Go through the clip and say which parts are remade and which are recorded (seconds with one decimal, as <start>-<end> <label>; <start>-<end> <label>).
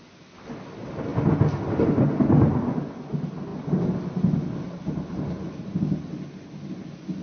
0.0-7.2 recorded